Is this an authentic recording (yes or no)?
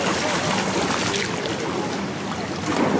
yes